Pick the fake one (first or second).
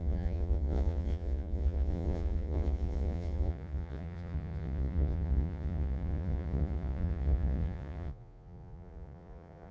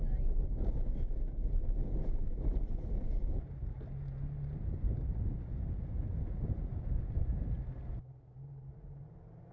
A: first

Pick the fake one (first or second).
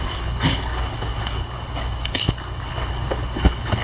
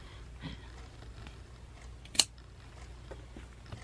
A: first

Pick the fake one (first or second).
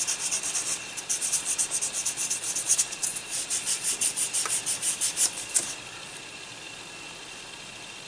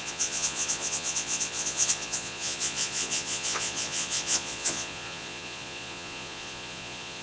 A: second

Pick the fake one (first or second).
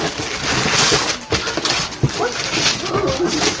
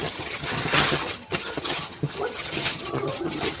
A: second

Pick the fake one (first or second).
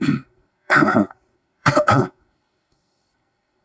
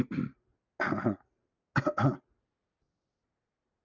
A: first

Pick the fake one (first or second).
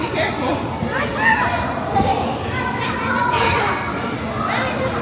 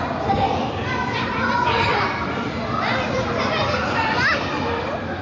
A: second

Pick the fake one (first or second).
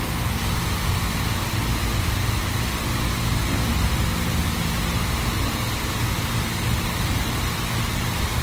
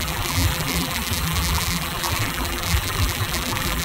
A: second